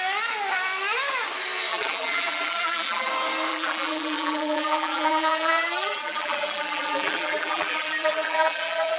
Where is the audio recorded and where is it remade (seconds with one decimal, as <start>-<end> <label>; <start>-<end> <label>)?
0.0-1.7 recorded; 1.7-3.1 remade; 3.1-3.5 recorded; 3.5-9.0 remade